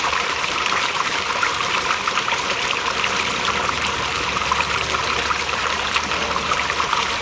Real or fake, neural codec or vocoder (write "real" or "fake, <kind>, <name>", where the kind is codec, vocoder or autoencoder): fake, vocoder, BigVGAN v2